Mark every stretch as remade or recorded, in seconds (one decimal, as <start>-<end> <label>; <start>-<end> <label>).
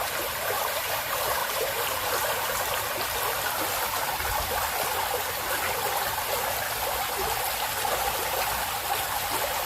0.0-1.4 recorded; 1.4-2.1 remade; 2.1-9.7 recorded